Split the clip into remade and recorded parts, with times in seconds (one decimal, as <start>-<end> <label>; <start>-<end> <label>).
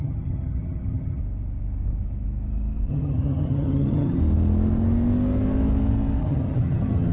0.0-1.2 remade; 1.2-2.9 recorded; 2.9-4.2 remade; 4.2-6.2 recorded; 6.2-7.1 remade